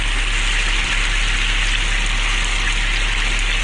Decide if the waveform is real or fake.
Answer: real